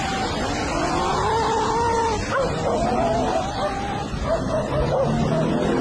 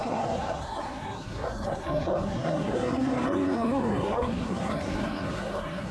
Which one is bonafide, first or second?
first